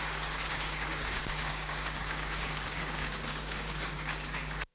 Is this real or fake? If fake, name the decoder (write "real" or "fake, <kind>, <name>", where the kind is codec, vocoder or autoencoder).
fake, codec, DAC